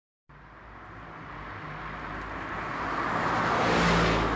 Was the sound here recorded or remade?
recorded